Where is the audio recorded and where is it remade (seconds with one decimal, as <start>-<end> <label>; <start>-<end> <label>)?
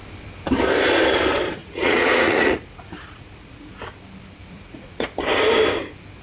0.0-1.6 recorded; 1.6-3.7 remade; 3.7-4.4 recorded; 4.4-5.1 remade; 5.1-6.2 recorded